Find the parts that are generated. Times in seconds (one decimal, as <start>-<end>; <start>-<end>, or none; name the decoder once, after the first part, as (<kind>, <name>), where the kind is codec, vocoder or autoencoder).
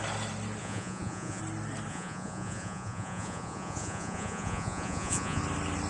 0.6-1.4 (vocoder, Vocos); 1.9-5.4